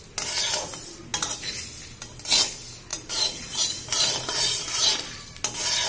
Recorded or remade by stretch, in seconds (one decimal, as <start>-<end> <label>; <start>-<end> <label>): 0.0-2.9 recorded; 2.9-5.0 remade; 5.0-5.9 recorded